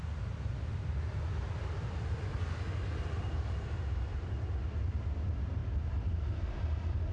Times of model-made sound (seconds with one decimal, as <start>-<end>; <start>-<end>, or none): 5.6-7.1